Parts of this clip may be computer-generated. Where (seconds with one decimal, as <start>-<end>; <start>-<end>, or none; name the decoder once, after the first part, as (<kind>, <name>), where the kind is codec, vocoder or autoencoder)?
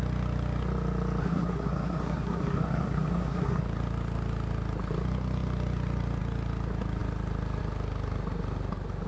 1.2-3.6 (codec, SNAC)